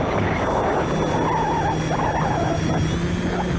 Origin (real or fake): real